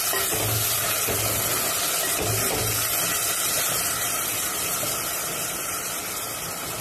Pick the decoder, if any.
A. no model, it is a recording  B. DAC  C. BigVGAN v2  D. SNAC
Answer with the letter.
A